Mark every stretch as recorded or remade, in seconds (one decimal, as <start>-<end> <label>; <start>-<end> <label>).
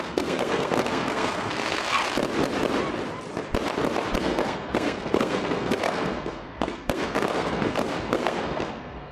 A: 0.0-2.0 remade; 2.0-4.2 recorded; 4.2-9.1 remade